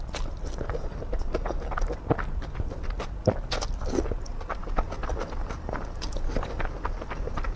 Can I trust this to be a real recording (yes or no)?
yes